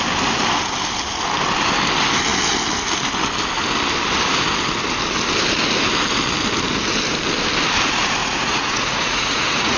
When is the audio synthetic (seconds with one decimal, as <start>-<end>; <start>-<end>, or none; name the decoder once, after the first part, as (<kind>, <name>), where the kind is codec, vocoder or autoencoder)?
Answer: 8.2-9.8 (vocoder, Vocos)